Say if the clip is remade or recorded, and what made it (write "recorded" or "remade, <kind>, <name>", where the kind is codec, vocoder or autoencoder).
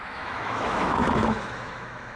remade, autoencoder, DAC-VAE